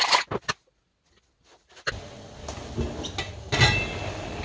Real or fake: real